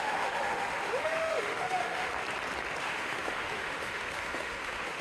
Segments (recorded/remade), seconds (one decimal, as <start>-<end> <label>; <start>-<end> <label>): 0.0-2.1 remade; 2.1-2.8 recorded; 2.8-5.0 remade